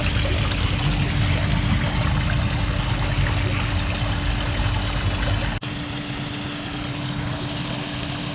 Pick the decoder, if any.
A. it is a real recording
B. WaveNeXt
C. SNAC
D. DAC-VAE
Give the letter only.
A